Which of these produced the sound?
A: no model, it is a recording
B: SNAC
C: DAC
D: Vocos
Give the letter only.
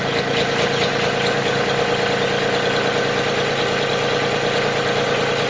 A